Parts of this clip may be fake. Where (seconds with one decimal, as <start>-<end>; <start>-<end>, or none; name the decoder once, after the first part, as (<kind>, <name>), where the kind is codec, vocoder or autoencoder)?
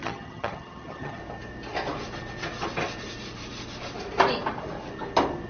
0.0-1.2 (vocoder, HiFi-GAN)